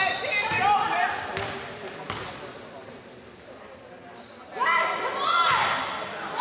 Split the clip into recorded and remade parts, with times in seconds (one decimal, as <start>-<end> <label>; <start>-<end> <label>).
0.0-6.4 recorded